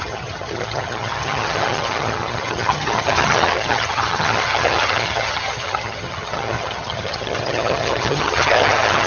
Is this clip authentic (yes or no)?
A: no